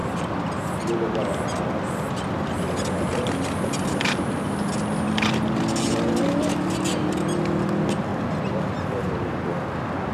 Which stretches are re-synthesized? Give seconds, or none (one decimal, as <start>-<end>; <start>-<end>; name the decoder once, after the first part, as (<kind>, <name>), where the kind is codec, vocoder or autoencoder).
none